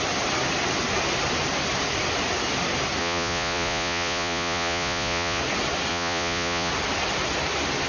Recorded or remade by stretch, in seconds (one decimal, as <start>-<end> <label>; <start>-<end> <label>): 0.0-3.0 recorded; 3.0-5.4 remade; 5.4-5.9 recorded; 5.9-6.7 remade; 6.7-7.9 recorded